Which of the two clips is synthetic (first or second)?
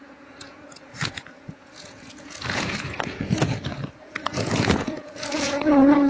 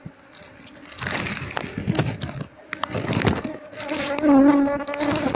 first